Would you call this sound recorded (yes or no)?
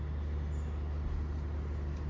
yes